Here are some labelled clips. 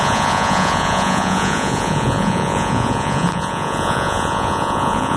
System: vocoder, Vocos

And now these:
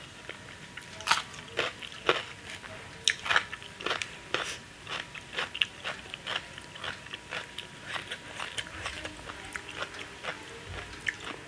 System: none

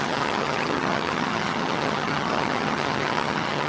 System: vocoder, HiFi-GAN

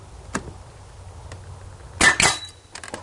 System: none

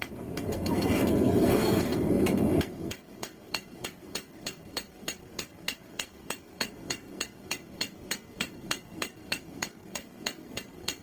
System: codec, SNAC